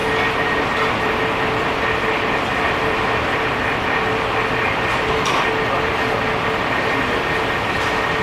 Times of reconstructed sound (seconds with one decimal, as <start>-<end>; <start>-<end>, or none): none